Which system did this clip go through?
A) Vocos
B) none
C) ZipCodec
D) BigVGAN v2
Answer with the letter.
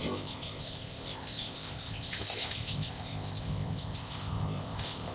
C